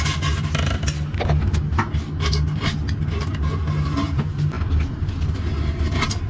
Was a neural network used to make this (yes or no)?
no